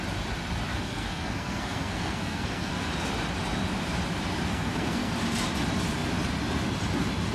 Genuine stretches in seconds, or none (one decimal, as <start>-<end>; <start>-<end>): 0.0-0.7; 2.9-4.5; 5.1-7.3